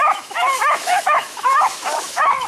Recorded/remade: remade